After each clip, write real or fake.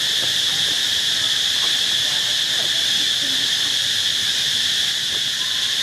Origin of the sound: real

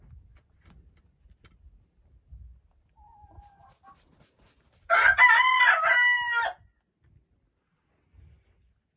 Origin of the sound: real